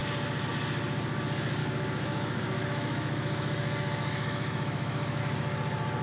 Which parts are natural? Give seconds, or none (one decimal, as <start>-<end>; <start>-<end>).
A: 0.0-1.6; 5.2-6.0

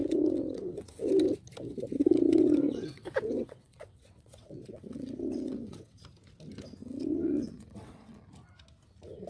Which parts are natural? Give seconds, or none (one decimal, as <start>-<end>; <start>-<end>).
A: 1.1-2.0; 6.0-6.8; 8.1-9.3